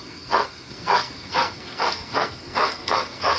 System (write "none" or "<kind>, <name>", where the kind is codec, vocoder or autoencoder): codec, SNAC